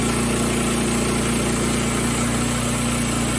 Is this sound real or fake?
real